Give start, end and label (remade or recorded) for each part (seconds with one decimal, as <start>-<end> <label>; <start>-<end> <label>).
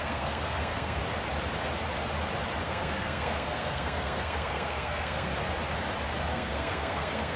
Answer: 0.0-1.0 remade; 1.0-2.6 recorded; 2.6-5.3 remade; 5.3-6.3 recorded; 6.3-7.4 remade